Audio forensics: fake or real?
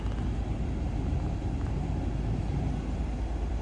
real